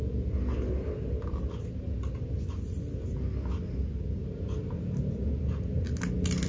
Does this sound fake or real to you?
real